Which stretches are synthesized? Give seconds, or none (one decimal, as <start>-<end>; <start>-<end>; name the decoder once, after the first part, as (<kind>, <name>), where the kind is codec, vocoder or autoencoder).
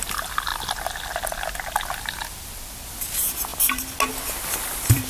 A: none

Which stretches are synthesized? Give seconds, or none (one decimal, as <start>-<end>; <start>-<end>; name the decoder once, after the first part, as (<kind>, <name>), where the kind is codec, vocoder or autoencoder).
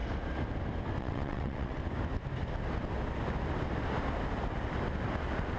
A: 1.0-1.8 (vocoder, WaveNeXt)